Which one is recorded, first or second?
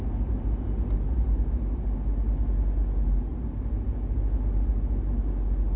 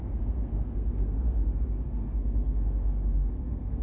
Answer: first